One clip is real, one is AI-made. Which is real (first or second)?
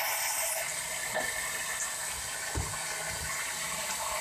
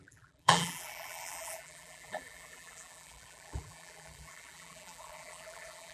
first